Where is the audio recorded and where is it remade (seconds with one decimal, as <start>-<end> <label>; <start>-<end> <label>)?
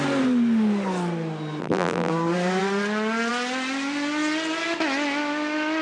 0.0-1.6 recorded; 1.6-2.1 remade; 2.1-5.8 recorded